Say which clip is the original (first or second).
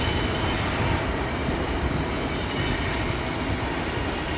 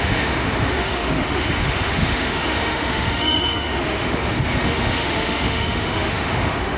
first